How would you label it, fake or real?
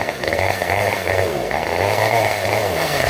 fake